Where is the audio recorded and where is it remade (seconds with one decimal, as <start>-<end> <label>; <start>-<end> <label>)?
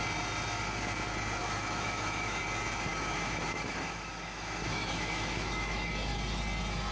0.0-1.4 recorded; 1.4-2.4 remade; 2.4-2.9 recorded; 2.9-5.9 remade; 5.9-6.9 recorded